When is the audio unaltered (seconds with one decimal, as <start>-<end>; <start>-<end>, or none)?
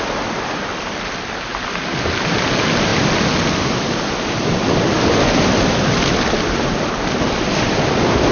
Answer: 0.0-8.3